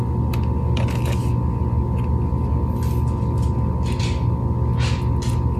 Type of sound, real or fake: real